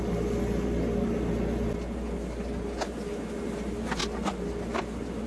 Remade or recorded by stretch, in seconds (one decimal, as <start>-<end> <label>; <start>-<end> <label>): 0.0-5.3 recorded